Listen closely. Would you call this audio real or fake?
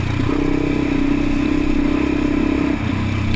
real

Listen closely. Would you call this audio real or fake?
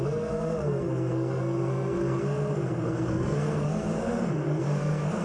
fake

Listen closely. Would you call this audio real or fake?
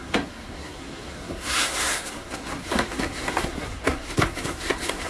fake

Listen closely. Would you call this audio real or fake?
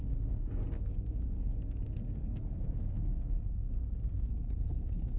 fake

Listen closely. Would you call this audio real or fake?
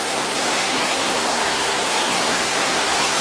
fake